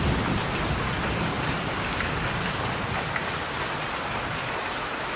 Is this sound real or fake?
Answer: real